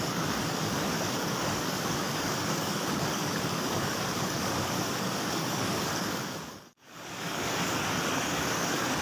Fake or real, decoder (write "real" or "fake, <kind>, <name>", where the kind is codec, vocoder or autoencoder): fake, codec, DAC